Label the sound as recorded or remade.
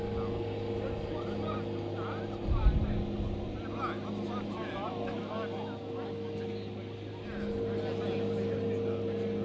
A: recorded